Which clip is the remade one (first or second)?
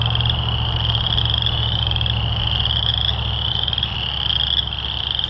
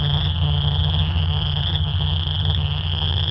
second